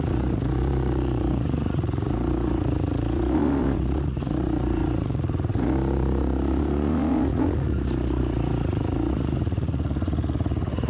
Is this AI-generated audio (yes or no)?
yes